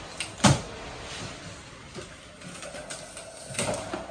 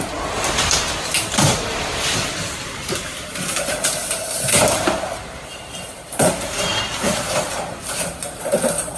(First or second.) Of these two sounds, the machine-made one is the second